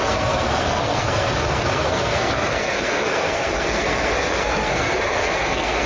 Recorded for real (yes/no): no